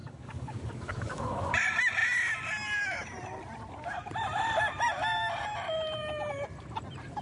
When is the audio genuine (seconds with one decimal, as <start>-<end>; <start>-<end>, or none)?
1.5-7.2